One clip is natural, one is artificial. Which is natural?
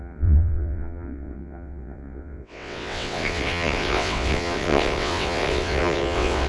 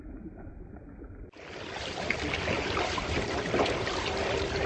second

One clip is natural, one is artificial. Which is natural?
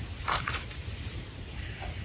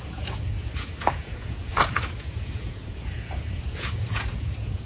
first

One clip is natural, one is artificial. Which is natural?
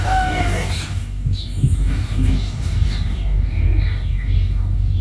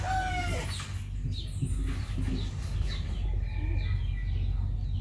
second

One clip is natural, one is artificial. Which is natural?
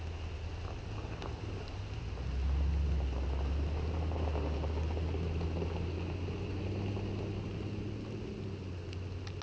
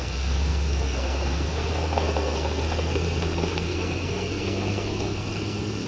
first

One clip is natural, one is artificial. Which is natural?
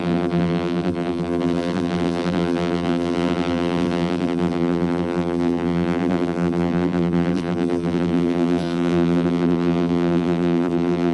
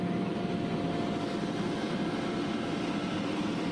second